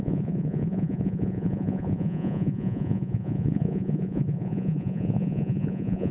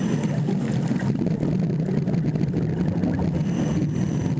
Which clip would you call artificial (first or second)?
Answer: first